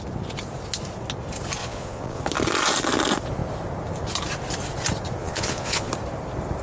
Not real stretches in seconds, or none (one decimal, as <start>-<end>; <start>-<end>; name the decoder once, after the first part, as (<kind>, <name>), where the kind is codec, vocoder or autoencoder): 1.6-2.2 (vocoder, Vocos); 5.2-5.9